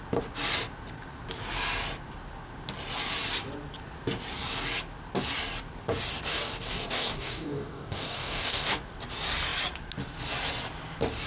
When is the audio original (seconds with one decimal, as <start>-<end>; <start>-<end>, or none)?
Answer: 0.0-6.3; 8.8-11.3